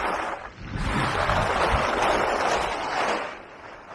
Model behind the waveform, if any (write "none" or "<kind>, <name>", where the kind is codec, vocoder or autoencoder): vocoder, BigVGAN v2